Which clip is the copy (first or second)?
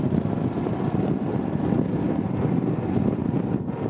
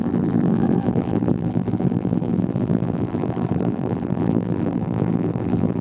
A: second